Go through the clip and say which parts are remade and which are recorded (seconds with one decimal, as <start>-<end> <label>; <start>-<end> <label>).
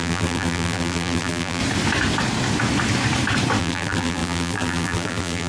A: 0.0-1.6 remade; 1.6-3.6 recorded; 3.6-5.5 remade